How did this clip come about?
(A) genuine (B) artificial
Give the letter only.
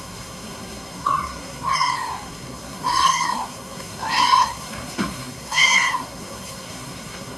B